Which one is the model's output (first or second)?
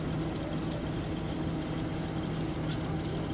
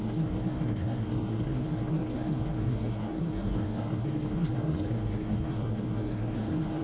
second